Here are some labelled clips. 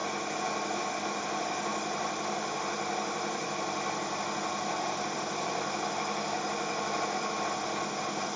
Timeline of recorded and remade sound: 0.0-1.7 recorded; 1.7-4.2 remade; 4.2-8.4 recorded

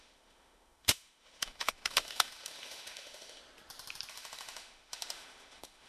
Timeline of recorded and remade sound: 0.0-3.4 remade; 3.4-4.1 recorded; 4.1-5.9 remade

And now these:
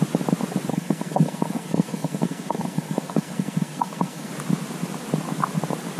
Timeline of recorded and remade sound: 0.0-0.7 recorded; 0.7-4.3 remade; 4.3-6.0 recorded

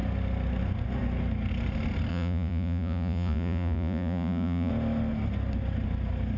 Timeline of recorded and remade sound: 0.0-2.1 recorded; 2.1-4.7 remade; 4.7-6.4 recorded

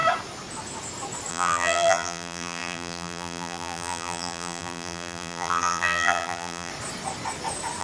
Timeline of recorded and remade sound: 0.0-1.3 recorded; 1.3-6.7 remade; 6.7-7.8 recorded

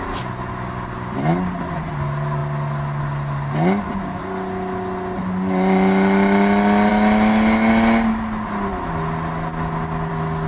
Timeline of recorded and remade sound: 0.0-10.5 recorded